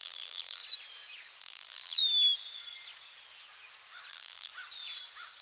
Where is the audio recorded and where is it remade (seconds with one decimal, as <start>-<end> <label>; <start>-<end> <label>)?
0.0-0.6 remade; 0.6-1.4 recorded; 1.4-2.0 remade; 2.0-4.1 recorded; 4.1-4.5 remade; 4.5-5.4 recorded